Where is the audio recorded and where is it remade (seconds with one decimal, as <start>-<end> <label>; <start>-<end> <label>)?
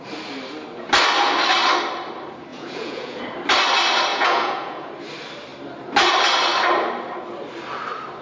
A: 0.0-2.5 recorded; 2.5-3.2 remade; 3.2-4.1 recorded; 4.1-4.9 remade; 4.9-8.2 recorded